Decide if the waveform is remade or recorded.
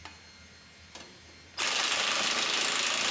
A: recorded